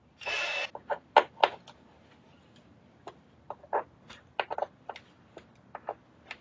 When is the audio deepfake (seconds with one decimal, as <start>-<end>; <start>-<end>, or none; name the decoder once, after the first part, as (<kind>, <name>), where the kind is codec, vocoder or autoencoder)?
none